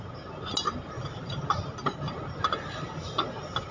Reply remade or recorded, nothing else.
recorded